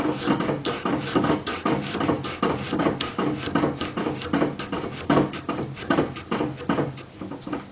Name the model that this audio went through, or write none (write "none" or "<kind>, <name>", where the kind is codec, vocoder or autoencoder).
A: none